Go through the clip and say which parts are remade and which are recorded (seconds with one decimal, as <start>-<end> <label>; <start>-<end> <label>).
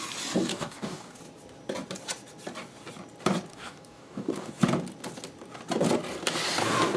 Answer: 0.0-0.5 recorded; 0.5-1.2 remade; 1.2-3.5 recorded; 3.5-4.5 remade; 4.5-7.0 recorded